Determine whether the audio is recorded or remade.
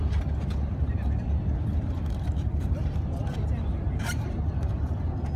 remade